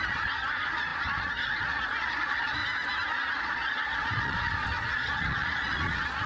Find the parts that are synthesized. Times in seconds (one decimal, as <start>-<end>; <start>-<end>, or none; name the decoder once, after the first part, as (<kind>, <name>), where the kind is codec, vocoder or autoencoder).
0.0-2.6 (vocoder, Vocos); 3.4-6.3